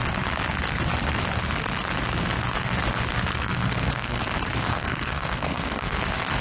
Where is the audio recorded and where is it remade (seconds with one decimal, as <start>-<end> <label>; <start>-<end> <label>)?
0.0-3.3 recorded; 3.3-4.2 remade; 4.2-4.7 recorded; 4.7-6.0 remade; 6.0-6.4 recorded